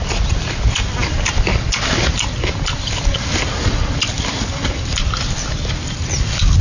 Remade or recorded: recorded